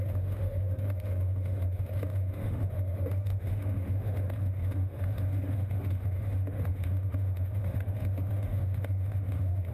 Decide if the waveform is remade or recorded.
remade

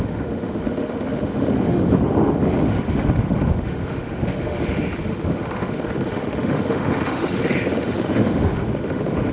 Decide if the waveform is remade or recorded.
remade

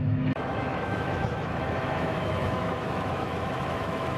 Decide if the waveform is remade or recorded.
remade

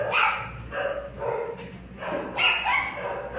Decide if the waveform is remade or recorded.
recorded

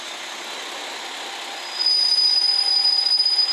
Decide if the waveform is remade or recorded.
recorded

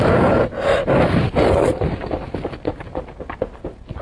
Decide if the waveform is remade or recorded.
recorded